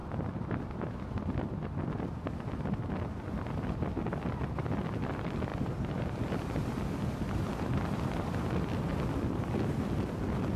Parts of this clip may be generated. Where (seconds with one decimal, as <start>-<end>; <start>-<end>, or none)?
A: 5.5-9.6